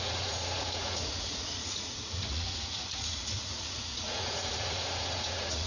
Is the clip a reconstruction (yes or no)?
yes